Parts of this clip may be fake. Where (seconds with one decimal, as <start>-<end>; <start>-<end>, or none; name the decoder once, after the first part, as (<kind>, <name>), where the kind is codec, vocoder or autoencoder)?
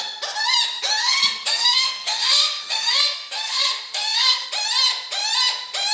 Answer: 1.0-4.5 (codec, SNAC)